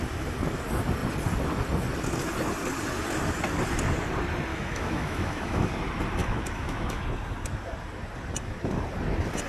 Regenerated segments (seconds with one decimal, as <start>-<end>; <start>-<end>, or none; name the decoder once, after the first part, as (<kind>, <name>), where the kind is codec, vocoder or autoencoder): 4.5-5.7 (autoencoder, DAC-VAE); 6.2-7.0